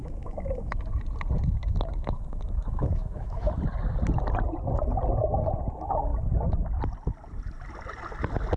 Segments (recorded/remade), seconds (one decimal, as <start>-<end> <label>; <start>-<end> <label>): 0.0-0.7 remade; 0.7-1.6 recorded; 1.6-3.5 remade; 3.5-8.6 recorded